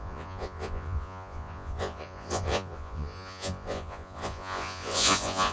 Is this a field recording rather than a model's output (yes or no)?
no